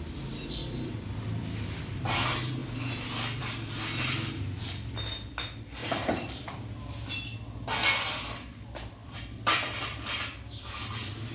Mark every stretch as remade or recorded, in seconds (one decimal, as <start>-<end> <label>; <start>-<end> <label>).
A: 0.0-0.6 recorded; 0.6-2.0 remade; 2.0-5.8 recorded; 5.8-7.1 remade; 7.1-9.0 recorded; 9.0-10.2 remade; 10.2-11.3 recorded